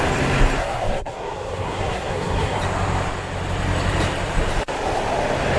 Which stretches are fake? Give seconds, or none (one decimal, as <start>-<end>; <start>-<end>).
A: 0.6-2.6